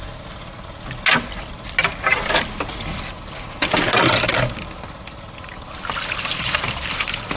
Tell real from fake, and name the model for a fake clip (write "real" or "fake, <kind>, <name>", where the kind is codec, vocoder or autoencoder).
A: real